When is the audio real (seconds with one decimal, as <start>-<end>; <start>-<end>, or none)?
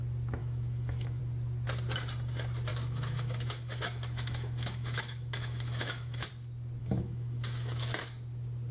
0.0-0.4; 1.2-2.7; 6.3-6.8; 8.0-8.7